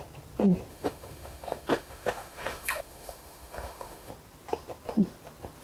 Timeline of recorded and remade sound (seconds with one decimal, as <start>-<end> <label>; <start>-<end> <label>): 0.0-0.7 recorded; 0.7-4.1 remade; 4.1-5.6 recorded